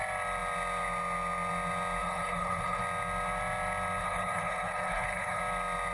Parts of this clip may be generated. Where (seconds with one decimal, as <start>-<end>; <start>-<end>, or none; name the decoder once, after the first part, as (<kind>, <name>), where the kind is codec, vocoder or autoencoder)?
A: 2.0-2.8 (codec, HILCodec); 4.0-5.4